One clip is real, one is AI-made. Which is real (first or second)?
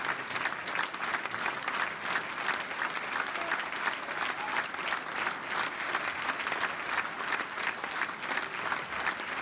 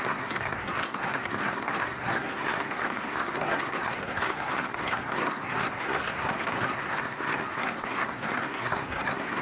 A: first